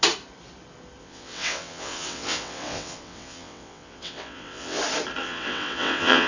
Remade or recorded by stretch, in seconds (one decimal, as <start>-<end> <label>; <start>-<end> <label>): 0.0-1.0 recorded; 1.0-4.8 remade; 4.8-5.2 recorded; 5.2-6.3 remade